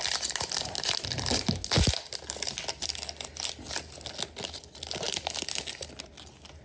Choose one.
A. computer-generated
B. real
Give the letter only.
B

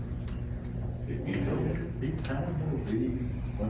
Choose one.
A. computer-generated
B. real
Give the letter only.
B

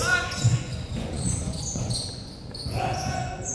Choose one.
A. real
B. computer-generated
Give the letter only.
B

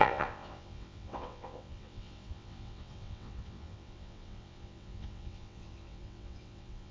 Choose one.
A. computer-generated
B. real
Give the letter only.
A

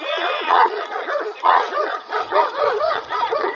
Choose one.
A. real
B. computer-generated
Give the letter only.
B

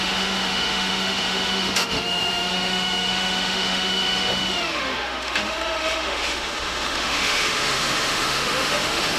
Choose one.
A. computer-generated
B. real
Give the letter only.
A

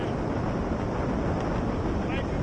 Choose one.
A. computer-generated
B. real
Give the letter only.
B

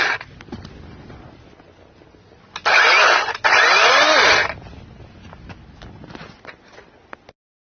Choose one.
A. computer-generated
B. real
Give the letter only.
B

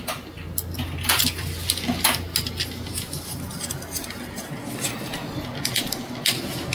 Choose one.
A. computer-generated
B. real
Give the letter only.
B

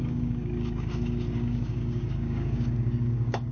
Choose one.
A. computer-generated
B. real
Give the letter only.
A